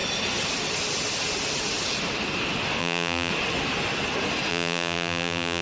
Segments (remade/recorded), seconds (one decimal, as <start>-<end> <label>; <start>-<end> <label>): 0.0-2.8 recorded; 2.8-3.3 remade; 3.3-4.5 recorded; 4.5-5.6 remade